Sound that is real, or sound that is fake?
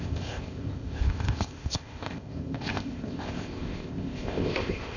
fake